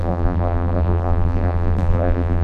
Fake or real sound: fake